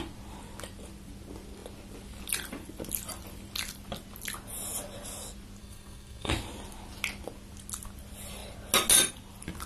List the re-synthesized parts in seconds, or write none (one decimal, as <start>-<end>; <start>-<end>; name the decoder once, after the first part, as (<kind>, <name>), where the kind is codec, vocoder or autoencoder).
5.6-6.3 (codec, SNAC)